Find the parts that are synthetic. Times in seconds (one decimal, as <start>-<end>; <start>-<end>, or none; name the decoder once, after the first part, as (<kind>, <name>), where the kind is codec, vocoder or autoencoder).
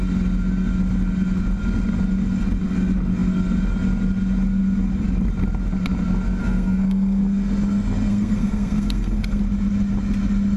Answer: 6.4-7.2 (codec, SNAC); 8.1-9.4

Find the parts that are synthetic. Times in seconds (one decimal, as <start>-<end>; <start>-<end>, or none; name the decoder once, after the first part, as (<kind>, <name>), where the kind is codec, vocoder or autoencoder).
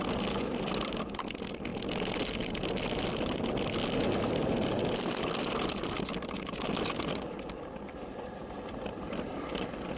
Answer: none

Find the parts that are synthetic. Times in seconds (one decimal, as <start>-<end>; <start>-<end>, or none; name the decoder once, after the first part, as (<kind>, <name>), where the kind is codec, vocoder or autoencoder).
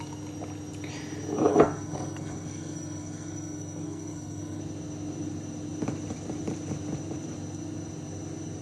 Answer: 1.5-4.6 (codec, SNAC)